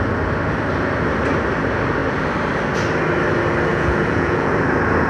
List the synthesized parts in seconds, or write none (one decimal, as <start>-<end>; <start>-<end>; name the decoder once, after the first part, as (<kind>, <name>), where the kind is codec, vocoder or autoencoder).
3.7-4.5 (vocoder, Vocos)